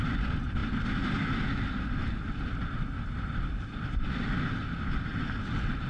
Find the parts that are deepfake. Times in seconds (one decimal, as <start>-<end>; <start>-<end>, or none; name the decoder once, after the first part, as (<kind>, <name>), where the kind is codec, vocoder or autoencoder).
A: none